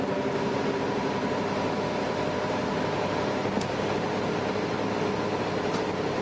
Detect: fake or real fake